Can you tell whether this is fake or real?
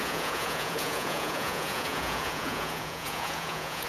fake